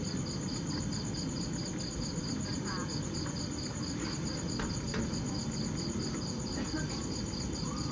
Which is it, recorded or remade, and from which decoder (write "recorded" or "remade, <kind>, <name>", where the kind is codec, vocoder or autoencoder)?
recorded